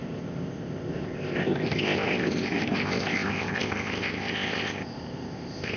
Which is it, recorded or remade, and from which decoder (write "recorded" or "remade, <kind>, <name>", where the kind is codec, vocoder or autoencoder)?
remade, codec, ZipCodec